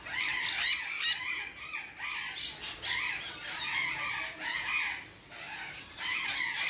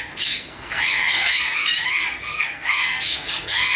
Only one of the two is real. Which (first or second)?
first